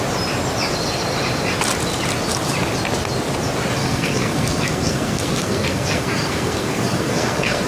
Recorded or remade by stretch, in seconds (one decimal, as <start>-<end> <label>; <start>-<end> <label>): 0.0-3.8 recorded; 3.8-7.7 remade